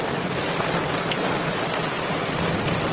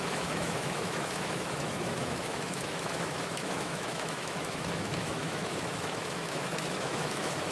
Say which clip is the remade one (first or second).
second